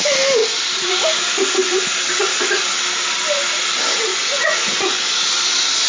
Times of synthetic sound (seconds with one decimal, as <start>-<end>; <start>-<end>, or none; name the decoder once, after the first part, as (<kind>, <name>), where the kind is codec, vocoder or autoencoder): 4.1-5.0 (vocoder, Vocos)